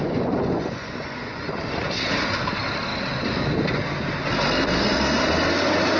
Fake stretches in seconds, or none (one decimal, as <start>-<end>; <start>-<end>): 0.0-1.6